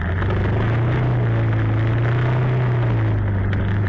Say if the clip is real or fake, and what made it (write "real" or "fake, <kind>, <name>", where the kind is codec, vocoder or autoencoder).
real